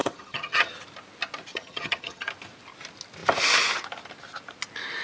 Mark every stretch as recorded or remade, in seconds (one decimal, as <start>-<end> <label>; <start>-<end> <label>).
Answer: 0.0-0.7 remade; 0.7-1.5 recorded; 1.5-2.3 remade; 2.3-5.0 recorded